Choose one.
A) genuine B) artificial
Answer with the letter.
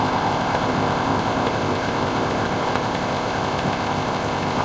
B